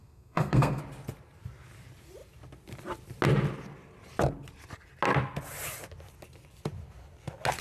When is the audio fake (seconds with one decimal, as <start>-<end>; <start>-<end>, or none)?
0.0-0.8